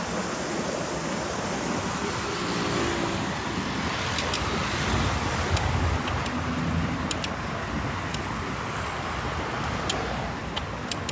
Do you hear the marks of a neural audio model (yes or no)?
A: no